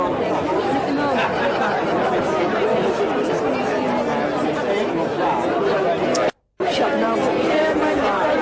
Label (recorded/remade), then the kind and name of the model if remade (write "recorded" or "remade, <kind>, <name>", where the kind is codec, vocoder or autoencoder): recorded